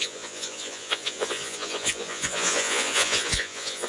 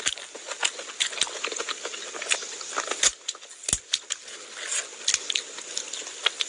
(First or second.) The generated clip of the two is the first